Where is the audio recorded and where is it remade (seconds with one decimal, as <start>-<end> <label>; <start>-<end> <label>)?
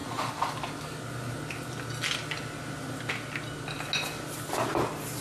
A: 0.0-5.2 recorded